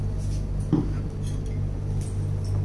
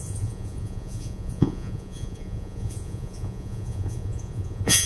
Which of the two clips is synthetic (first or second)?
second